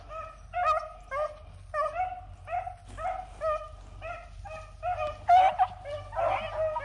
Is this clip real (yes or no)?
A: yes